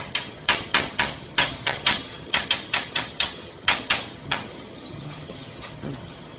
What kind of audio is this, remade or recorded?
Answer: remade